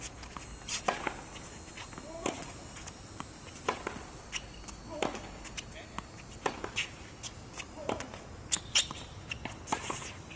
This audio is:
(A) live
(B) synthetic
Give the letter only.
A